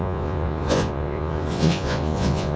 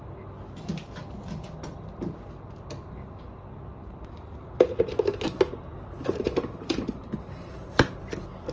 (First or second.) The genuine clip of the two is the second